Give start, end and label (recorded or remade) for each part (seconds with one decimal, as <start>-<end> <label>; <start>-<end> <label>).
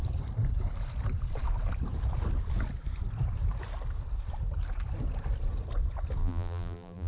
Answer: 0.0-6.2 recorded; 6.2-7.1 remade